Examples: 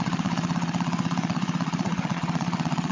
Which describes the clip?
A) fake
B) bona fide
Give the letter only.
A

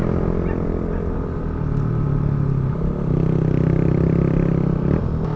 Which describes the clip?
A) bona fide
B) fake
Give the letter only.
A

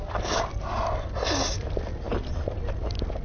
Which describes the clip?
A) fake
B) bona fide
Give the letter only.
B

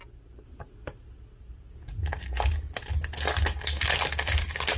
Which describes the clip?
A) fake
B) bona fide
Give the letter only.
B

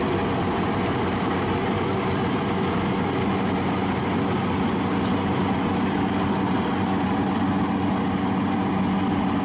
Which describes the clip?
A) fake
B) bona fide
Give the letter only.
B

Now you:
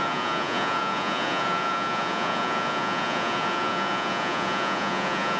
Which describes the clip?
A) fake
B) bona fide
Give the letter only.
A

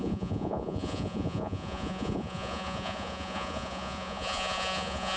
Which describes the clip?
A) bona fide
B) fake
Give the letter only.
B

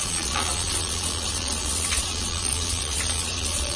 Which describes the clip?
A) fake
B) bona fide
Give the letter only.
A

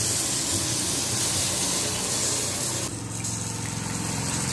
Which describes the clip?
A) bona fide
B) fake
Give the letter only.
A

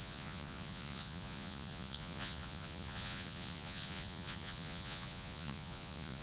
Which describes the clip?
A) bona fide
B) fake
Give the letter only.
B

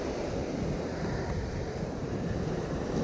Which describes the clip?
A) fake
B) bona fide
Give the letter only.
B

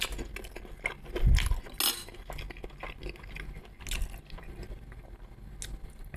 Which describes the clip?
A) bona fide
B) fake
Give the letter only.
A